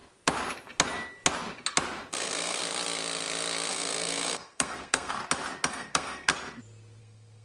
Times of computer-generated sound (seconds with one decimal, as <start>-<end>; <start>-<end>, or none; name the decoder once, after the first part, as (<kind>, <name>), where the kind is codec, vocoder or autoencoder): 2.1-2.6 (codec, SNAC); 3.7-5.2; 5.7-6.3; 7.0-7.4